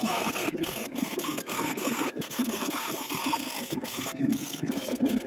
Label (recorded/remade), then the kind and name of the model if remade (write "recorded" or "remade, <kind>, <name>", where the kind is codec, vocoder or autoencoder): remade, codec, SNAC